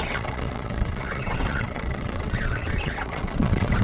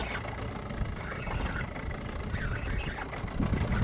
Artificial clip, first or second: first